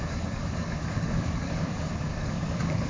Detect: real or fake fake